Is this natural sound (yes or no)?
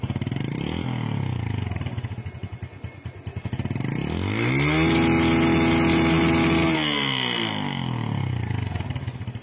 yes